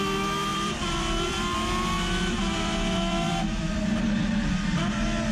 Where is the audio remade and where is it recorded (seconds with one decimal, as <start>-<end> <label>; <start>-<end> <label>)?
0.0-0.5 recorded; 0.5-3.7 remade; 3.7-5.3 recorded